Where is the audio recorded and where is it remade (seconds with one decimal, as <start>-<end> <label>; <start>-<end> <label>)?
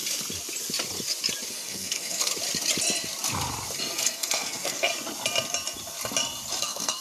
0.0-1.5 recorded; 1.5-2.3 remade; 2.3-3.8 recorded; 3.8-4.9 remade; 4.9-6.6 recorded; 6.6-7.0 remade